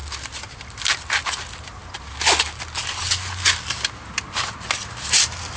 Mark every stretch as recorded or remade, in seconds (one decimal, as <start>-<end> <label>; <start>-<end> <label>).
0.0-5.6 recorded